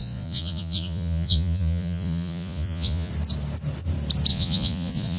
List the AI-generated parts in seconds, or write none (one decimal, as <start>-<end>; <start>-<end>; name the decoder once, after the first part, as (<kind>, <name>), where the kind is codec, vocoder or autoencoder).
0.0-3.1 (vocoder, Vocos); 4.3-5.2